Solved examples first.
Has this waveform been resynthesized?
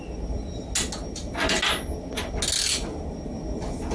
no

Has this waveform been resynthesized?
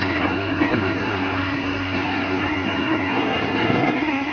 yes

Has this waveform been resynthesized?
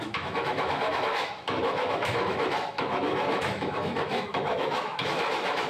yes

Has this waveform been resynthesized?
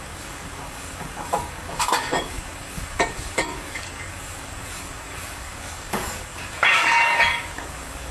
yes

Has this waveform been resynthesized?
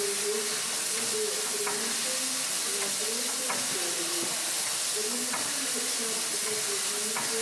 no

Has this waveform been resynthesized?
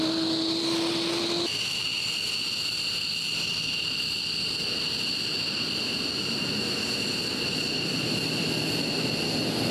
no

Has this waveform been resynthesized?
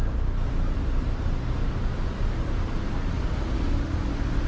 no